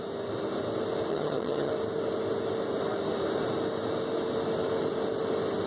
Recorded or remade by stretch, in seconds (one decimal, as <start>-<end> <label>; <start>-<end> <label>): 0.0-1.1 recorded; 1.1-1.7 remade; 1.7-5.7 recorded